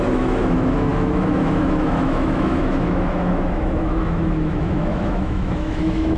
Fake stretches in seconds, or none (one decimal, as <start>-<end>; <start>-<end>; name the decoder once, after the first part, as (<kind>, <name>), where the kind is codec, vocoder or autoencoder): 0.0-6.2 (autoencoder, DAC-VAE)